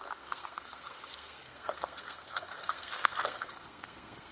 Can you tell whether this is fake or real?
fake